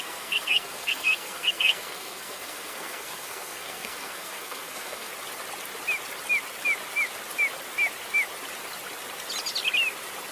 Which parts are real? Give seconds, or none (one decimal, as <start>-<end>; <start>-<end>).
5.1-10.3

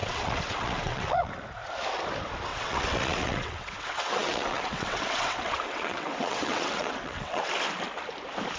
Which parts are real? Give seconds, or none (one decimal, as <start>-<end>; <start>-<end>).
1.3-2.5; 7.5-8.6

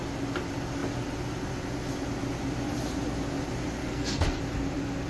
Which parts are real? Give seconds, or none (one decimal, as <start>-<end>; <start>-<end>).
0.0-3.8; 4.4-5.1

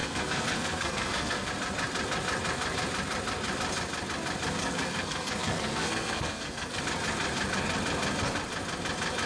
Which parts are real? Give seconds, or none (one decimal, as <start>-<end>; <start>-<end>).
1.5-4.6; 6.8-9.3